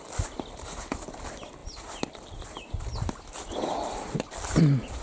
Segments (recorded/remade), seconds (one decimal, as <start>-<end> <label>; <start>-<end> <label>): 0.0-5.0 recorded